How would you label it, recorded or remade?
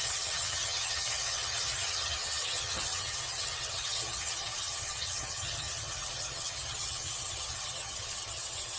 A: remade